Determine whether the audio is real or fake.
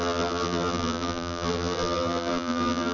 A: fake